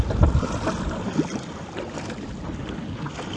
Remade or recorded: recorded